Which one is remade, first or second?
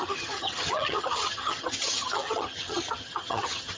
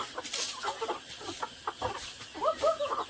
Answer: first